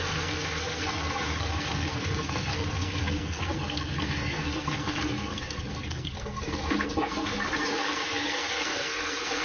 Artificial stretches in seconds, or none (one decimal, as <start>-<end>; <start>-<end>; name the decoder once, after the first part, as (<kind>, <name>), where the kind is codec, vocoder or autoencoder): 0.0-9.4 (codec, SNAC)